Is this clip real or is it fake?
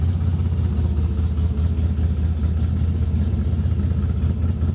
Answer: real